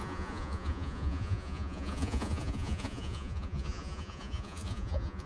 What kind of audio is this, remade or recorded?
remade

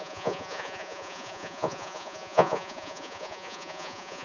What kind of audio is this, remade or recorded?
remade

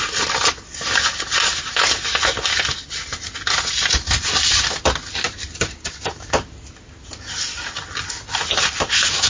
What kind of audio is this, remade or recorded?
recorded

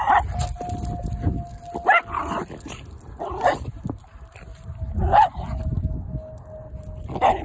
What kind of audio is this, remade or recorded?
recorded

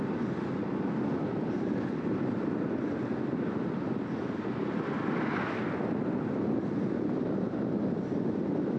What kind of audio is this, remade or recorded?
recorded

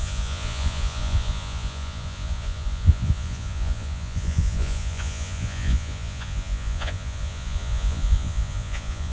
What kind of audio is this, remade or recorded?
remade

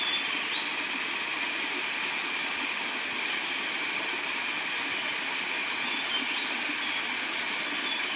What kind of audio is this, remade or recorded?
recorded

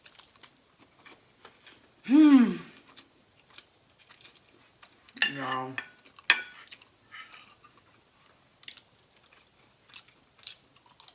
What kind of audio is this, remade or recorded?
recorded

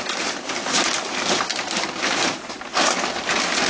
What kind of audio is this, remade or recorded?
recorded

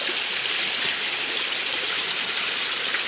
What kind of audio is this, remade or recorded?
recorded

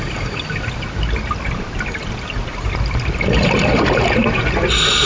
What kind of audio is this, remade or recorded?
recorded